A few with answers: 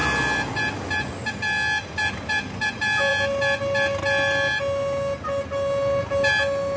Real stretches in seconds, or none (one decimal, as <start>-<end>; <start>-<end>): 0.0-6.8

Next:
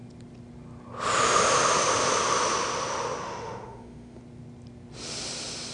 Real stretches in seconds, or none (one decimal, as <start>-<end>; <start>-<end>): 0.0-3.2; 4.2-5.7

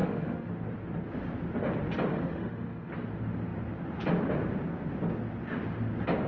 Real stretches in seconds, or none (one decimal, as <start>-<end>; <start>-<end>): 0.5-2.1; 2.9-6.3